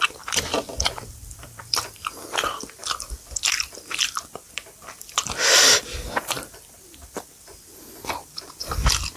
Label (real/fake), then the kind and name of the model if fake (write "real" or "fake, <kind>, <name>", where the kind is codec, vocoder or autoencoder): fake, vocoder, BigVGAN v2